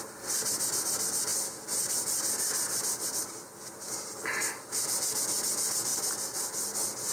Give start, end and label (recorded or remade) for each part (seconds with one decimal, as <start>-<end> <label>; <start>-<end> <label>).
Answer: 0.0-7.1 recorded

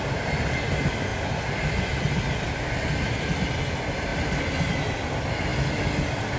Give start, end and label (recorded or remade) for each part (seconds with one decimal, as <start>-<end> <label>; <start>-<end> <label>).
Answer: 0.0-4.1 recorded; 4.1-4.7 remade; 4.7-6.4 recorded